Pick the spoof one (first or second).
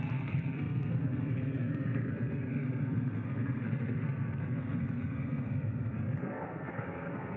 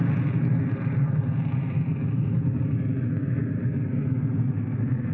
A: first